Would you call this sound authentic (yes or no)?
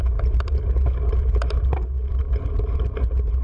no